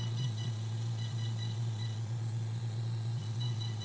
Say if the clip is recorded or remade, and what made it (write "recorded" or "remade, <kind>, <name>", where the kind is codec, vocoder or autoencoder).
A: remade, vocoder, Vocos